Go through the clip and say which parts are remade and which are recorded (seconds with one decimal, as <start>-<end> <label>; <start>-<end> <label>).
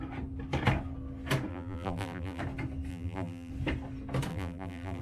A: 0.0-1.5 recorded; 1.5-2.4 remade; 2.4-2.9 recorded; 2.9-3.5 remade; 3.5-4.3 recorded; 4.3-5.0 remade